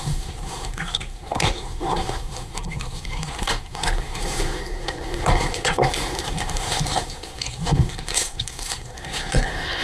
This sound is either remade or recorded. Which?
remade